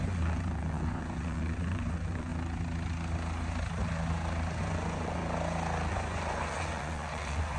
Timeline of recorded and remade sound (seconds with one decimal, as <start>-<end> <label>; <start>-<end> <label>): 0.0-2.3 remade; 2.3-4.6 recorded; 4.6-5.2 remade; 5.2-5.9 recorded; 5.9-7.6 remade